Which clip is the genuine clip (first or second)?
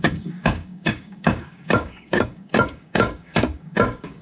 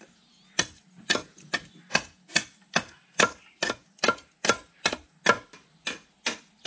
second